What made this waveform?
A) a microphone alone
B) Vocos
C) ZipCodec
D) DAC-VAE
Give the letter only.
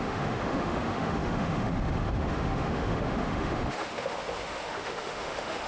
D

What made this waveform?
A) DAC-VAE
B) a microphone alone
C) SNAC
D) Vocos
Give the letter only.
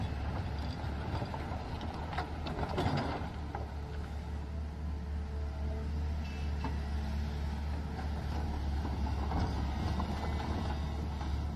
B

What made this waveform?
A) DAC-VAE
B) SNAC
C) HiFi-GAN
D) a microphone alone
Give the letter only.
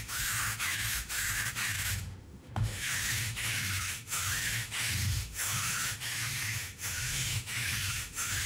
A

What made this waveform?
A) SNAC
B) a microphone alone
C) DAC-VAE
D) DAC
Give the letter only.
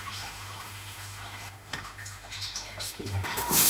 C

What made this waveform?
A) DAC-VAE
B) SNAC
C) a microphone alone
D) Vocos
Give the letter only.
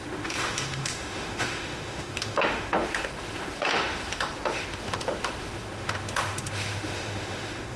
A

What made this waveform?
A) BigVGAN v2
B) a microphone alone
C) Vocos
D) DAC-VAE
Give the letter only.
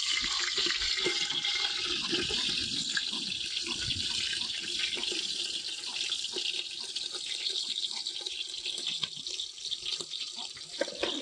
B